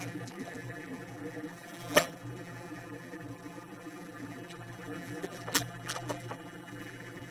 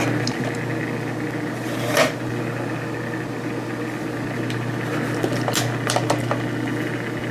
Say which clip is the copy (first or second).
first